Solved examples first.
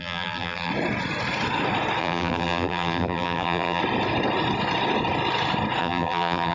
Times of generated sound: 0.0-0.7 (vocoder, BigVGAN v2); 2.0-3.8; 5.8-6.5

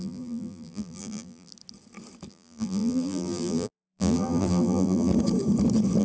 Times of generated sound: 0.0-1.5 (vocoder, BigVGAN v2); 2.3-5.1

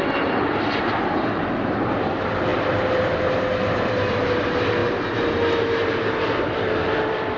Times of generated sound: 0.0-4.8 (vocoder, BigVGAN v2); 6.4-7.4

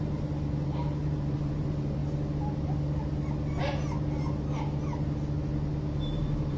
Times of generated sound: 0.0-2.0 (vocoder, BigVGAN v2); 6.0-6.6